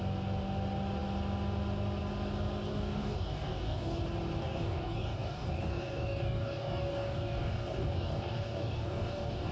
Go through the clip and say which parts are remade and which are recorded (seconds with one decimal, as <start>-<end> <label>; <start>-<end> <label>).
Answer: 0.0-2.7 recorded; 2.7-4.0 remade; 4.0-4.4 recorded; 4.4-9.5 remade